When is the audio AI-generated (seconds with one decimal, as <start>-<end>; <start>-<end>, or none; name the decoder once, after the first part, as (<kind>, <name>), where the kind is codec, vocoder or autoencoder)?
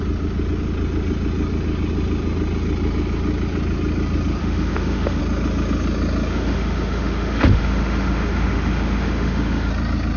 4.4-5.2 (autoencoder, DAC-VAE); 6.3-9.7